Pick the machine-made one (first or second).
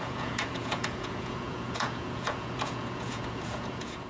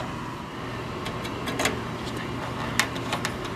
first